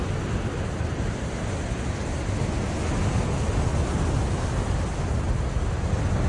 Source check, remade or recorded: recorded